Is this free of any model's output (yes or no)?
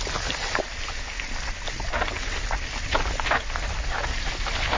yes